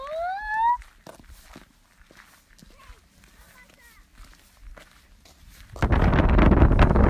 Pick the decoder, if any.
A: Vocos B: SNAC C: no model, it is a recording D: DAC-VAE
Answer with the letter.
C